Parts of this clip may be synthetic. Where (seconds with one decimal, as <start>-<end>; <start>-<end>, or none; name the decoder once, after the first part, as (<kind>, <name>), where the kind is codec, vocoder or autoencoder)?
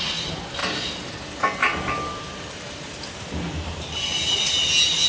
none